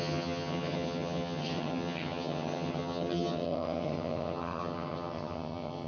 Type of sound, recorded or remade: remade